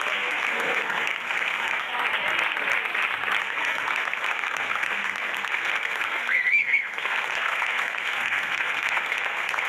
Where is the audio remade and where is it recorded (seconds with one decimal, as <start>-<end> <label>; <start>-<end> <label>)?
0.0-1.9 remade; 1.9-3.4 recorded; 3.4-9.7 remade